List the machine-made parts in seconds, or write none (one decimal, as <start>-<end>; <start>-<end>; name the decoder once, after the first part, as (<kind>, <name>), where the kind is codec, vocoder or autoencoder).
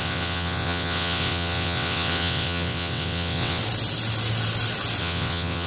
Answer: 0.0-3.6 (vocoder, WaveNeXt); 5.0-5.7